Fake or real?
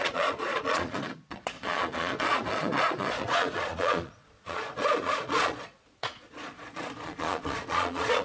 fake